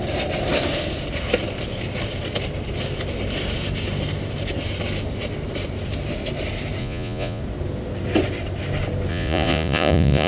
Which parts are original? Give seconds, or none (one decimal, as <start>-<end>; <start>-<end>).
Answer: 0.0-6.8; 7.4-9.1